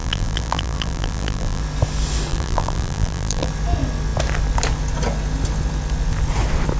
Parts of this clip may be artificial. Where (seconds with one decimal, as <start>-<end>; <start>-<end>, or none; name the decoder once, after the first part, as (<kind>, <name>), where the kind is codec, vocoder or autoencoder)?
0.0-1.6 (vocoder, BigVGAN v2); 2.3-3.5